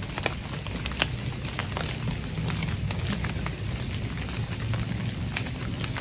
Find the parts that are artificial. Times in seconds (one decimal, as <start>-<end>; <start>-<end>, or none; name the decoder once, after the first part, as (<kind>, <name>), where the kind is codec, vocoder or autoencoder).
none